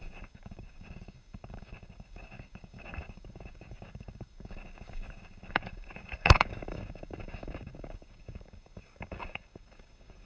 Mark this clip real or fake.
fake